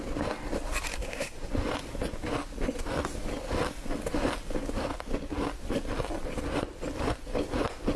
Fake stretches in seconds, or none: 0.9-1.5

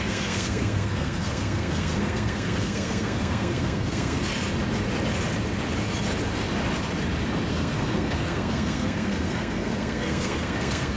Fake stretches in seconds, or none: 0.0-4.2; 7.5-11.0

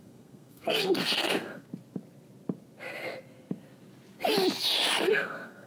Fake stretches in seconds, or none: 0.0-1.7; 5.1-5.7

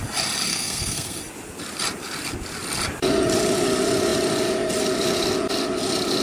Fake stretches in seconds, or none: 0.5-1.2

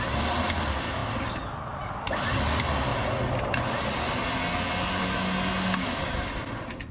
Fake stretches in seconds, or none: none

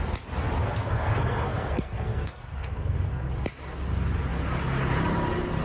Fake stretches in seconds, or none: 0.6-3.3

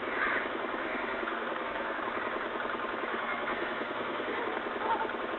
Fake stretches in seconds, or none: 0.8-2.0; 3.1-4.4